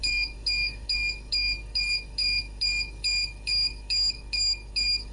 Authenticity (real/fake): fake